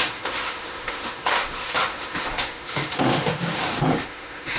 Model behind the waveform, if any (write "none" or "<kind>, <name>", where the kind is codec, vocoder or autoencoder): autoencoder, DAC-VAE